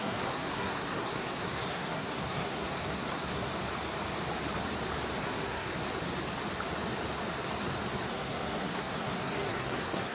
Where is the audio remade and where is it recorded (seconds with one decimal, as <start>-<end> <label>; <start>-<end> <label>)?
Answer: 0.0-3.5 remade; 3.5-5.2 recorded; 5.2-5.7 remade; 5.7-8.1 recorded; 8.1-10.1 remade